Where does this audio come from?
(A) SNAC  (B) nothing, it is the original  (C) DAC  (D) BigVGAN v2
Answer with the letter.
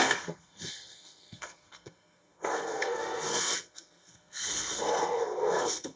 A